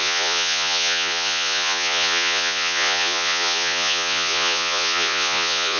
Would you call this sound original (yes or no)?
no